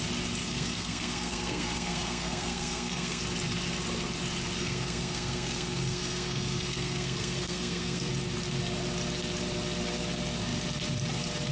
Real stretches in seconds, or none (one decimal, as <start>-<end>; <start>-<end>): 0.0-0.4; 3.2-4.6; 8.1-11.5